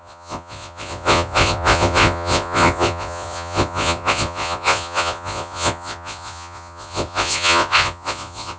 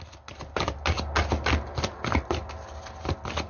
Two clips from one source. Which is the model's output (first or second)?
first